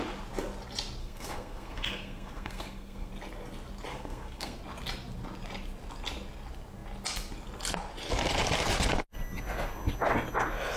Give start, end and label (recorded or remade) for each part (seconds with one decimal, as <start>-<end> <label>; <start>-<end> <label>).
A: 0.0-1.0 recorded; 1.0-3.1 remade; 3.1-3.9 recorded; 3.9-4.6 remade; 4.6-10.8 recorded